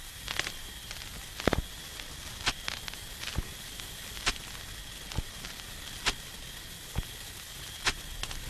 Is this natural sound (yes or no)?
yes